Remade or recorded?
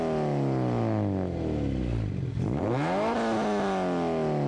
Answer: recorded